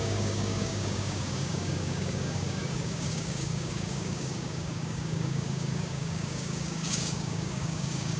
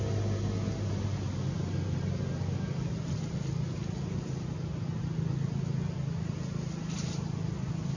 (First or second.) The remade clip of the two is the first